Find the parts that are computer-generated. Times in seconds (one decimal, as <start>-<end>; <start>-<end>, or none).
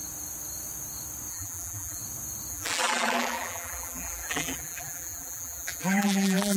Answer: 1.3-2.0; 2.5-6.6